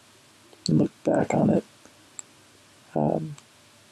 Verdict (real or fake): real